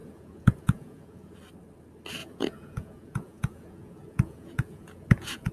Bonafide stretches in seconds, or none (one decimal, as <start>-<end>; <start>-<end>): 1.4-2.2